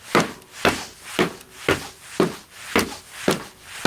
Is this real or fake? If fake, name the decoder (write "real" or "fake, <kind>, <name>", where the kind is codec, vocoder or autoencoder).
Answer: real